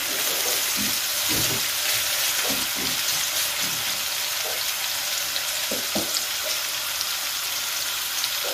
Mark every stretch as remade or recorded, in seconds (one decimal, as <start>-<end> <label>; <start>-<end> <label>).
0.0-8.5 recorded